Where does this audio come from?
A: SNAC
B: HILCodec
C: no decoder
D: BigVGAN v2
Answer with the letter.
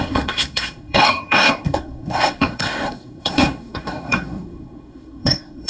A